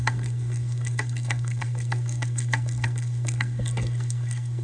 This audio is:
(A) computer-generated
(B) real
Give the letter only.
A